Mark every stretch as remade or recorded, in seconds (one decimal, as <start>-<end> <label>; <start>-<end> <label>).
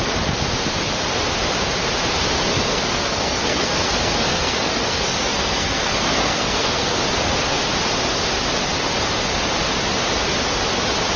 0.0-2.5 recorded; 2.5-7.0 remade; 7.0-11.2 recorded